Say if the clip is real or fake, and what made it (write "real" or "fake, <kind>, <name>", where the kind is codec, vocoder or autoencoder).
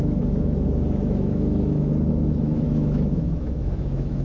fake, autoencoder, DAC-VAE